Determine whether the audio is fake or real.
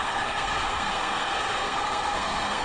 fake